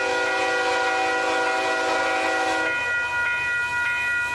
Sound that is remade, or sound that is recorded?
recorded